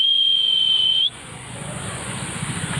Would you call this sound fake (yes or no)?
yes